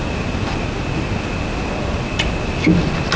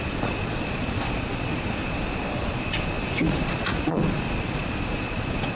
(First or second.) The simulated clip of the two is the second